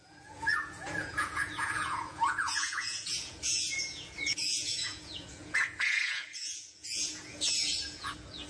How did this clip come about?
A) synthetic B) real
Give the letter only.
A